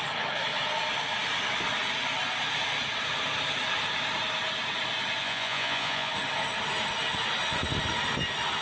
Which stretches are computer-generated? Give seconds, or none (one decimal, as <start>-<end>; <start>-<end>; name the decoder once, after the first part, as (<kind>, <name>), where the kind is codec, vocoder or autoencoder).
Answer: 5.2-6.1 (vocoder, Vocos)